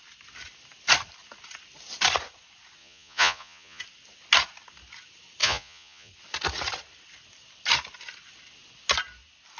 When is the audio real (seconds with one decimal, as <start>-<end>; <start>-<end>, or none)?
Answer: 0.0-2.8; 3.8-5.4; 6.1-9.6